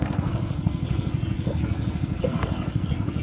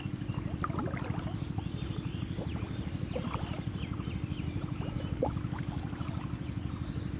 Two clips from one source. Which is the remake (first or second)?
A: first